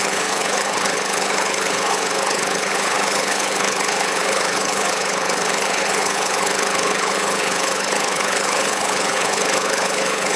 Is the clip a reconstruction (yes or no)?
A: yes